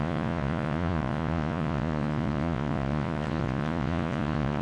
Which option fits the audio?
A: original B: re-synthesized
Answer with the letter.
B